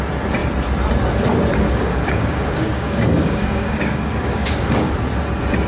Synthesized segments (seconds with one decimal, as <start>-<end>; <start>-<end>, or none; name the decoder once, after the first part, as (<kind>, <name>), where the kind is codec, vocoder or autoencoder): 1.5-4.9 (codec, DAC)